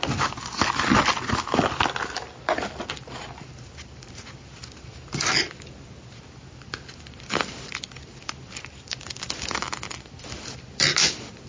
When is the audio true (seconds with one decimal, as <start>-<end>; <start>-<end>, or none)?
0.0-11.5